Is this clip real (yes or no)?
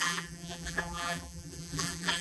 no